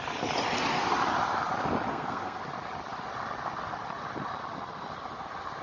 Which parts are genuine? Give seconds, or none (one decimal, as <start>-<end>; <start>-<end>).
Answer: 0.0-1.9; 2.4-5.6